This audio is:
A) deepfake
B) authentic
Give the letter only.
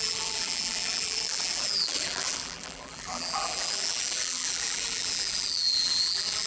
A